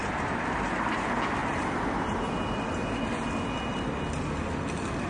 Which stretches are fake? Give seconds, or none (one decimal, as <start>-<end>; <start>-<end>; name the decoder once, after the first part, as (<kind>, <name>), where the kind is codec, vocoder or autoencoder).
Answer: none